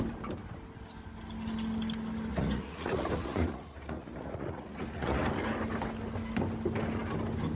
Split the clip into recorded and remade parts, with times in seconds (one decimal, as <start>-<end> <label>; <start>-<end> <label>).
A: 0.0-2.3 recorded; 2.3-5.3 remade; 5.3-7.6 recorded